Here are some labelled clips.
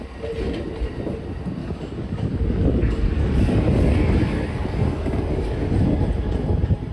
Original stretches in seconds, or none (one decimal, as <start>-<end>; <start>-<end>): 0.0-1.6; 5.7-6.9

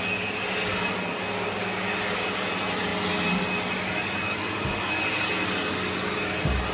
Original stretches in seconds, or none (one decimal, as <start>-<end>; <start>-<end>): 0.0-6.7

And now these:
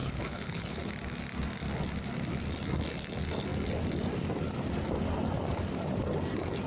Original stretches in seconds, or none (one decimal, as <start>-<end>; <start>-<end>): 0.8-6.7